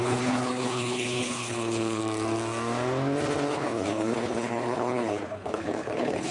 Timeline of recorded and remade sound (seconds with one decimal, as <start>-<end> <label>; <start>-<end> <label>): 0.0-2.0 remade; 2.0-3.5 recorded; 3.5-6.3 remade